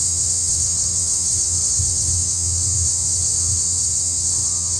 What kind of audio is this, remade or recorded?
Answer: remade